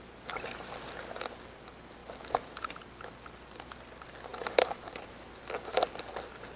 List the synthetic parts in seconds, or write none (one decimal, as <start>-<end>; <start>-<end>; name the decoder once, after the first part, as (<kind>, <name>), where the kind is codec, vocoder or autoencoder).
4.3-5.2 (vocoder, BigVGAN v2)